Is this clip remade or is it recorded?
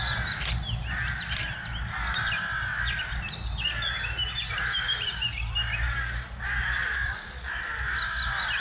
recorded